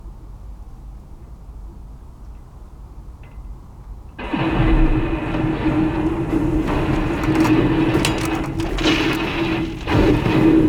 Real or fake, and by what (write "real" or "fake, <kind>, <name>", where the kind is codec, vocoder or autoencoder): real